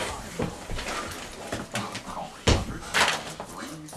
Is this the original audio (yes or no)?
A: yes